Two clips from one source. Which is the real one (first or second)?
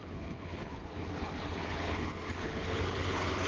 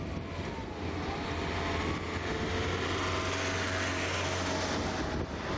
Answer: second